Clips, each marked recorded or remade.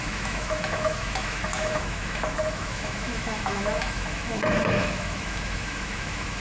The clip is remade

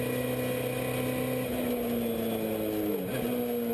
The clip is recorded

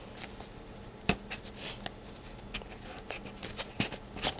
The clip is recorded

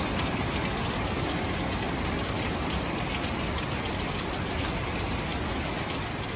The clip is recorded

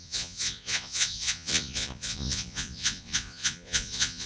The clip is remade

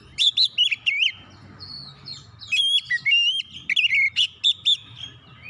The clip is recorded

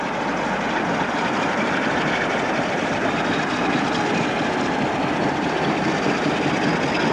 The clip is recorded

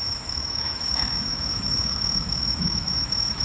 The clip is remade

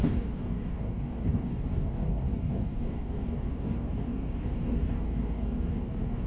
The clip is remade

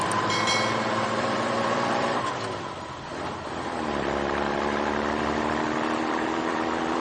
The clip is remade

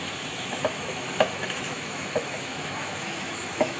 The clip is remade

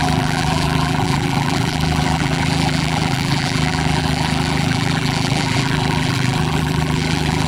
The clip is remade